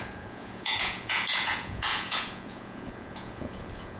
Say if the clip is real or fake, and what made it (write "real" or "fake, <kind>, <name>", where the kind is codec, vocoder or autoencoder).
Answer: fake, vocoder, Vocos